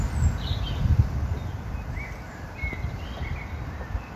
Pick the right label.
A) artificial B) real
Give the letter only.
B